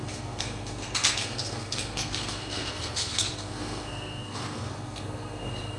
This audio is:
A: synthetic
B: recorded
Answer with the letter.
A